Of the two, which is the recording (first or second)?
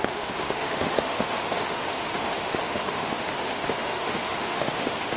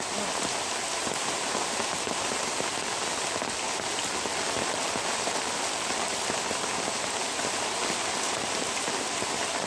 second